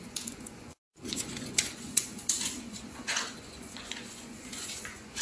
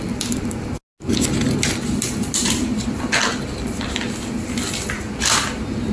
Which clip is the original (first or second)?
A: second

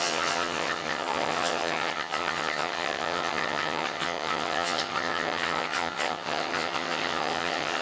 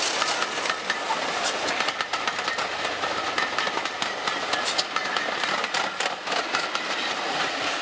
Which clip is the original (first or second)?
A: second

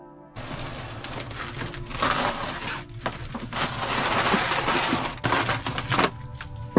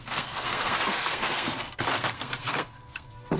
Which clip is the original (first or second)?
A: first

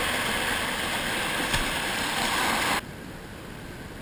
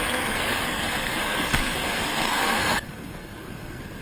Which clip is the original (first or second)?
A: first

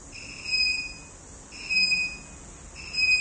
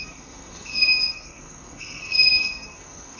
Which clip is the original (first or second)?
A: first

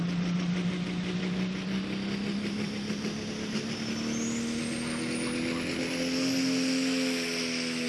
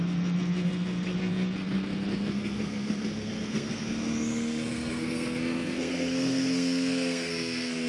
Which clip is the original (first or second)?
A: first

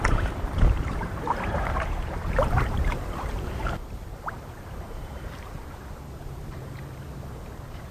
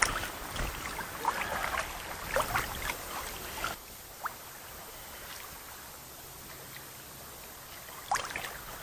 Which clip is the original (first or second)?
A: second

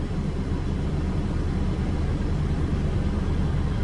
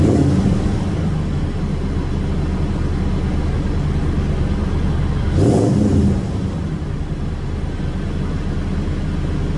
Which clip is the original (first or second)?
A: second